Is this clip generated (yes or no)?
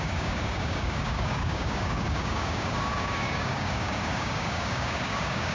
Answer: yes